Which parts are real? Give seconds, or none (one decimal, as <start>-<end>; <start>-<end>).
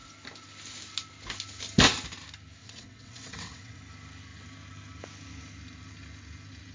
0.0-2.6; 3.8-6.7